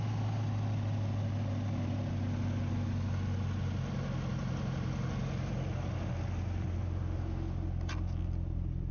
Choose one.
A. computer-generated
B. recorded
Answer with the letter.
B